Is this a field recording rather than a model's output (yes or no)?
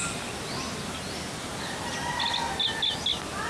yes